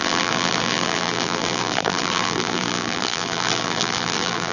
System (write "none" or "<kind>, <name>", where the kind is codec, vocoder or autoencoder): vocoder, BigVGAN v2